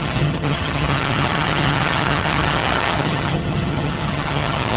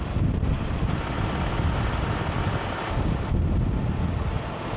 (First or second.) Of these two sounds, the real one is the second